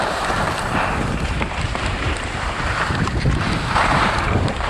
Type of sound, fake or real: fake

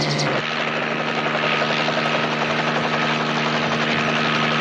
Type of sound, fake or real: real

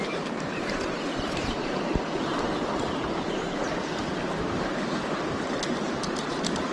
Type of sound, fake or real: fake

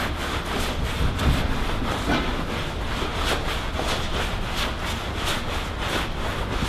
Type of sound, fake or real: real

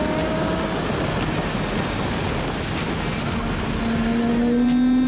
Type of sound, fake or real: real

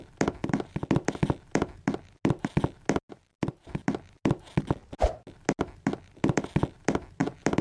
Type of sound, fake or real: real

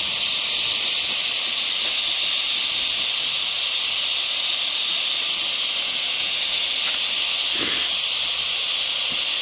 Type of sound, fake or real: real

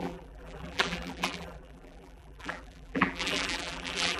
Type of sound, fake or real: fake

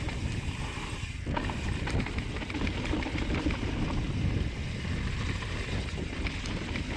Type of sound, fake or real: real